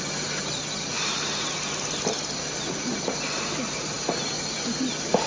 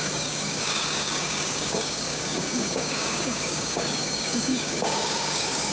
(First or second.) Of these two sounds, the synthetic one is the second